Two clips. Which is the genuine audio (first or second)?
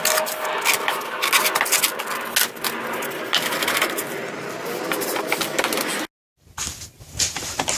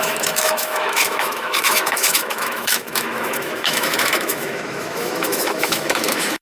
first